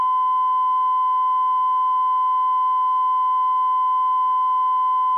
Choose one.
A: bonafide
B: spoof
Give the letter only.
A